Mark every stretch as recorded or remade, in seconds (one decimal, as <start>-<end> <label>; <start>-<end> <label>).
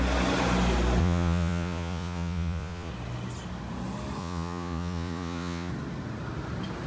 0.0-1.0 recorded; 1.0-2.9 remade; 2.9-4.2 recorded; 4.2-5.7 remade; 5.7-6.9 recorded